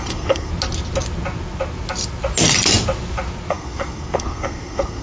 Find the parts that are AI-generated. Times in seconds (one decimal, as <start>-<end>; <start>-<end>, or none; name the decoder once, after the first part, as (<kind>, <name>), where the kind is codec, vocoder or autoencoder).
0.0-0.5 (codec, SNAC); 3.5-5.0